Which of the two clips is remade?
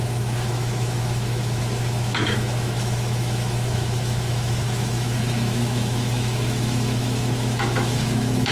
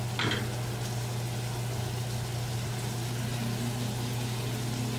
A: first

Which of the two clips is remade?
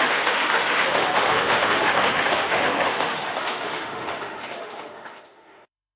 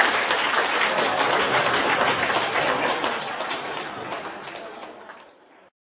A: first